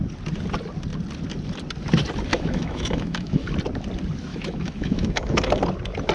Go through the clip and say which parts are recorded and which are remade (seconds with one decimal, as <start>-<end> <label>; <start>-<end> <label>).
0.0-2.3 recorded; 2.3-3.5 remade; 3.5-4.3 recorded; 4.3-5.6 remade; 5.6-6.1 recorded